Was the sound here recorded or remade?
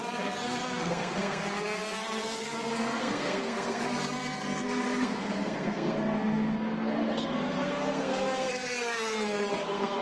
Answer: remade